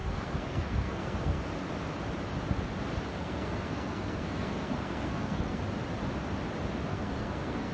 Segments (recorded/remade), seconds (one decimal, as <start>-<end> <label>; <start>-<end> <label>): 0.0-1.4 remade; 1.4-3.1 recorded; 3.1-5.6 remade; 5.6-6.9 recorded; 6.9-7.7 remade